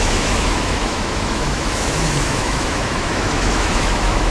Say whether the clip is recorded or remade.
remade